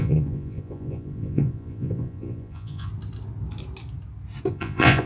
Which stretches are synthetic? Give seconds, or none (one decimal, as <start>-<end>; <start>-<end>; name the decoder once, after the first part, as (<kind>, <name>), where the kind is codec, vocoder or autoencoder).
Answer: 0.0-2.9 (vocoder, Vocos); 4.5-5.1